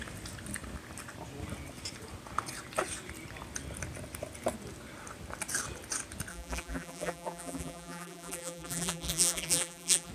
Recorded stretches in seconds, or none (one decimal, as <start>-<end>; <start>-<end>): 0.0-6.3